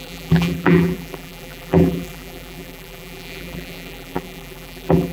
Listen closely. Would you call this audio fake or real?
fake